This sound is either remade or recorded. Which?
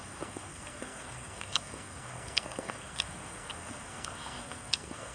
remade